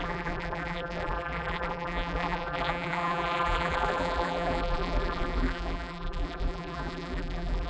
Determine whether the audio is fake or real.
fake